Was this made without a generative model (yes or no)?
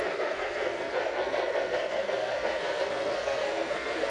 no